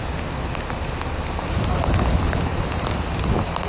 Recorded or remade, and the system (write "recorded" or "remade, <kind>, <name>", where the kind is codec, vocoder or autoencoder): recorded